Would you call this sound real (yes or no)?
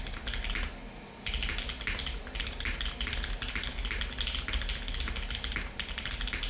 yes